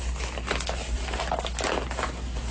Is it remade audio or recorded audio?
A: recorded